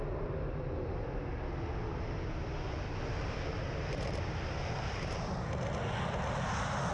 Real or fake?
real